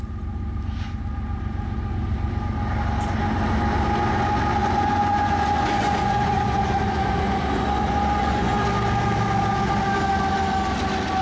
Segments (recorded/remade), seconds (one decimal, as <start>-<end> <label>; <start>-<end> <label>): 0.0-4.6 recorded; 4.6-8.6 remade; 8.6-11.2 recorded